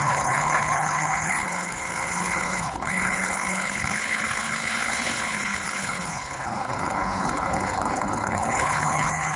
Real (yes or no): no